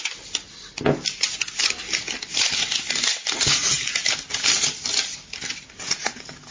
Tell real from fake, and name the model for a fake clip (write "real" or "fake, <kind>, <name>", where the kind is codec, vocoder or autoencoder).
real